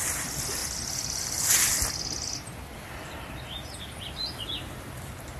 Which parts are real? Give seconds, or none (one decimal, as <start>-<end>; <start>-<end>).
0.0-5.4